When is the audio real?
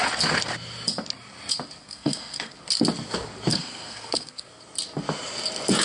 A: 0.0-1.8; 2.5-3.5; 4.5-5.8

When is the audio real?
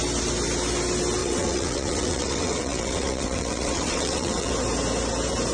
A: 0.0-1.2; 4.5-5.5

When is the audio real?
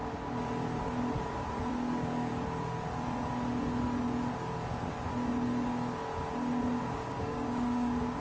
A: 0.0-1.7; 2.3-6.8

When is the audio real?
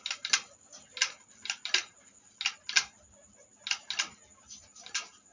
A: 0.0-5.3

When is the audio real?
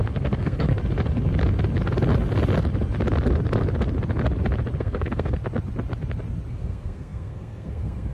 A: 0.7-4.8; 5.4-6.5